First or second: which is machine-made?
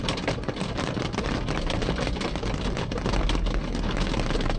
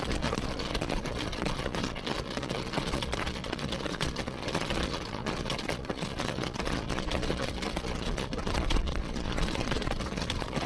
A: second